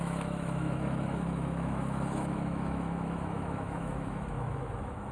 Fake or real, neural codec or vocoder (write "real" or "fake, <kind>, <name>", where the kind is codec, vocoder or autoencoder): fake, autoencoder, DAC-VAE